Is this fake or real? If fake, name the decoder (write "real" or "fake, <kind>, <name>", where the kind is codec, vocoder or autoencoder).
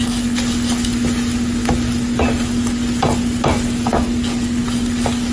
real